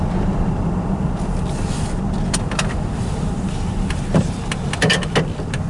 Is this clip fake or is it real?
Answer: real